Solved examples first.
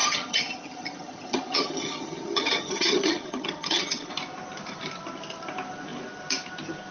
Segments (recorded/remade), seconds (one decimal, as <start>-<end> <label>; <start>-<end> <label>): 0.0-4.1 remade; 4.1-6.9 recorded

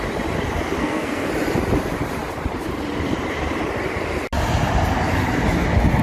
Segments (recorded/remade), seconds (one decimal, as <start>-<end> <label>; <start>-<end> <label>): 0.0-0.8 recorded; 0.8-1.3 remade; 1.3-6.0 recorded

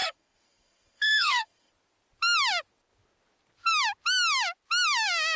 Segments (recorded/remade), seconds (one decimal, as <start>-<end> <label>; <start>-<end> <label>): 0.0-1.7 remade; 1.7-5.4 recorded

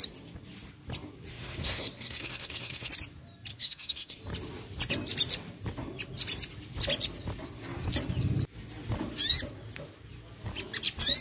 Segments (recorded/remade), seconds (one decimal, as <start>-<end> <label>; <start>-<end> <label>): 0.0-1.3 recorded; 1.3-2.9 remade; 2.9-3.5 recorded; 3.5-4.2 remade; 4.2-11.2 recorded

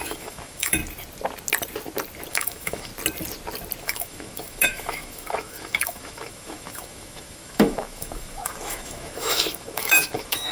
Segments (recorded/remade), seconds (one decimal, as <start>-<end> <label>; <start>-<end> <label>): 0.0-0.8 remade; 0.8-2.3 recorded; 2.3-2.9 remade; 2.9-3.8 recorded; 3.8-10.5 remade

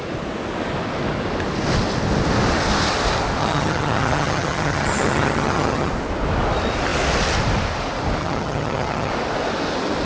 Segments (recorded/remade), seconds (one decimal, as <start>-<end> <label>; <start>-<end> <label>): 0.0-3.4 recorded; 3.4-5.9 remade; 5.9-8.2 recorded; 8.2-9.1 remade; 9.1-10.1 recorded